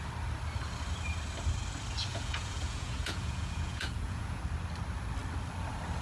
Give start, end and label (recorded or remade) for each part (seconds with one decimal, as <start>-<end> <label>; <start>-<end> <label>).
0.0-2.1 recorded; 2.1-4.4 remade; 4.4-6.0 recorded